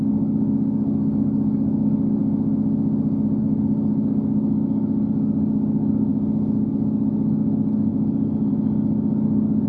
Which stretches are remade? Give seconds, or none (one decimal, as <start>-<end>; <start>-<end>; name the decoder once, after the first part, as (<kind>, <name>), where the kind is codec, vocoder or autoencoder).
0.0-2.2 (codec, DAC); 3.4-6.1; 6.7-9.7